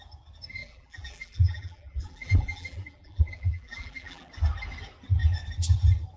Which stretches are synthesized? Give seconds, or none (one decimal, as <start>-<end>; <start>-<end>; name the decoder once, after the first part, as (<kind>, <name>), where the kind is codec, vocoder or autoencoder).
0.6-4.3 (vocoder, BigVGAN v2)